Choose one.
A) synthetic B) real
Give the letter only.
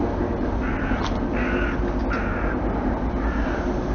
B